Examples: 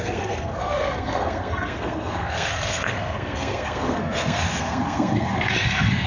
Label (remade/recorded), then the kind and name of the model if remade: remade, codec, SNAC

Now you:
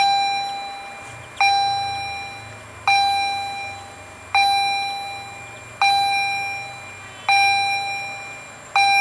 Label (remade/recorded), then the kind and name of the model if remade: recorded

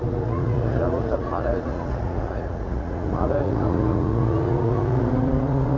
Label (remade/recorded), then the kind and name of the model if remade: remade, vocoder, Vocos